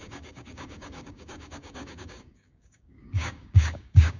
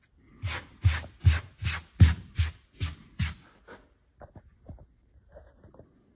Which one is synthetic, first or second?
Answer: first